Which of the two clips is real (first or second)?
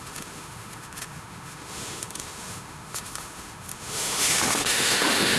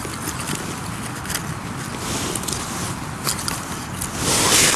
second